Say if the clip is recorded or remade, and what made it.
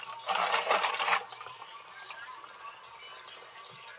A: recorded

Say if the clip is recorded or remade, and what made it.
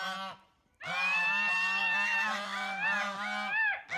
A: recorded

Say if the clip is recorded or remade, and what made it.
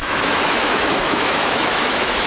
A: remade, autoencoder, DAC-VAE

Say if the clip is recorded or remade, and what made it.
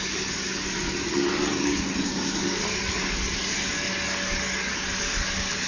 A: remade, codec, DAC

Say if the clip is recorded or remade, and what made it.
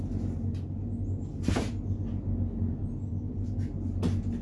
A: recorded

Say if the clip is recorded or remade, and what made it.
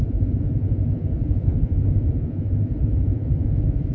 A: remade, vocoder, Vocos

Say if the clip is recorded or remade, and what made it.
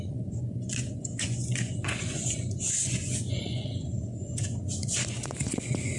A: remade, vocoder, Vocos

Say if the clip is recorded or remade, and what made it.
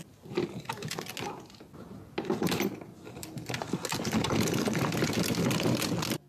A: recorded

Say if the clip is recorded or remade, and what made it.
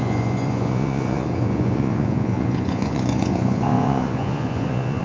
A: remade, vocoder, Vocos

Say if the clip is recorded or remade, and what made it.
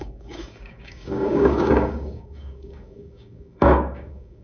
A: remade, codec, DAC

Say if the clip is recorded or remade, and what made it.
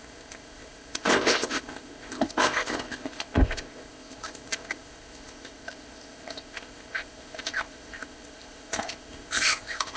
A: remade, codec, ZipCodec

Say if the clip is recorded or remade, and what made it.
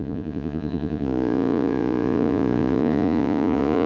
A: remade, vocoder, Vocos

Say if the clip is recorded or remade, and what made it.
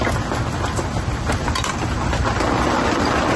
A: recorded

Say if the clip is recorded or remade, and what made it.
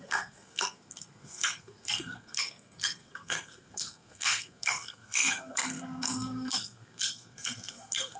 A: remade, codec, SNAC